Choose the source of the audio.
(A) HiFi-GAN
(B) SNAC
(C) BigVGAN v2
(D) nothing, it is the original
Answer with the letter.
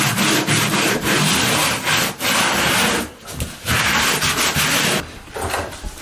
D